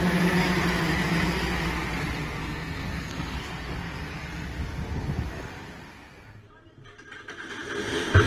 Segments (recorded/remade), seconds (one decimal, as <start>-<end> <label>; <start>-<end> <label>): 0.0-2.4 recorded; 2.4-3.4 remade; 3.4-8.3 recorded